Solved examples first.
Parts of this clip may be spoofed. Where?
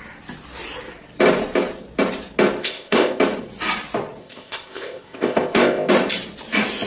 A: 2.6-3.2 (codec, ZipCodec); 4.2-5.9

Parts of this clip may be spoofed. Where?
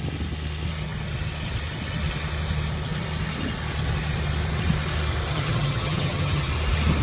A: 5.3-6.5 (vocoder, HiFi-GAN)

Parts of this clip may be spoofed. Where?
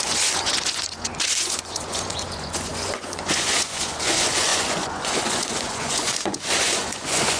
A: 0.0-7.4 (vocoder, Vocos)